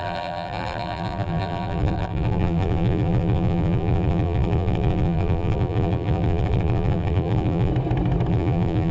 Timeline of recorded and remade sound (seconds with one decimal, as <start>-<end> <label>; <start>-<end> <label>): 0.0-7.7 remade; 7.7-8.3 recorded; 8.3-8.9 remade